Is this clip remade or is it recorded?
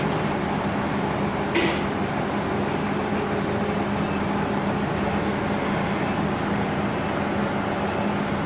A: recorded